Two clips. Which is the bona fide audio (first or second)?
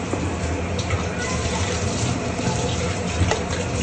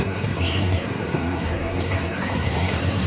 first